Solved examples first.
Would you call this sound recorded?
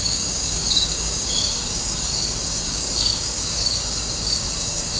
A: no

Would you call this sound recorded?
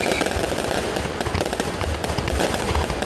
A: no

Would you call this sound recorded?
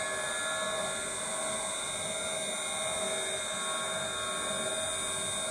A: yes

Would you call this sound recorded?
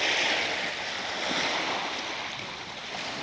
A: yes